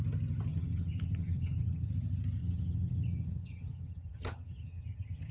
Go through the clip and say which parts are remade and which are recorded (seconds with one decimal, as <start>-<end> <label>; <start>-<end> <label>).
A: 0.0-0.5 recorded; 0.5-1.9 remade; 1.9-2.4 recorded; 2.4-5.3 remade